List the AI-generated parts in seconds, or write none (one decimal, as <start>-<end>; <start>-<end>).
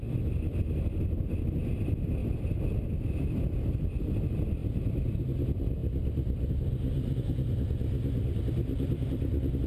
2.2-3.9; 4.6-5.2; 8.7-9.7